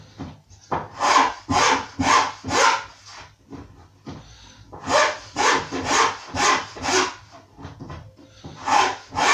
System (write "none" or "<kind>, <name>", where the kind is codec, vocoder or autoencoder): none